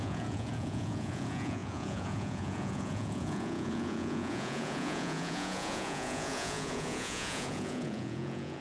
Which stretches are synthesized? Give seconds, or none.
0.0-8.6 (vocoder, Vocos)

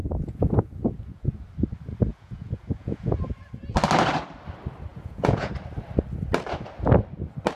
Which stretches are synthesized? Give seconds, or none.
0.0-1.3 (vocoder, Vocos); 2.1-3.2; 4.9-5.5

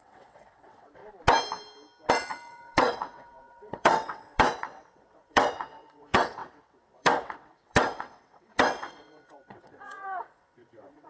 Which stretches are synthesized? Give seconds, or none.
0.0-1.0 (vocoder, WaveNeXt); 2.1-11.1

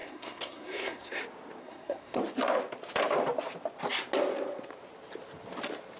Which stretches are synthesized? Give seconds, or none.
0.0-1.2 (codec, SNAC); 1.6-2.2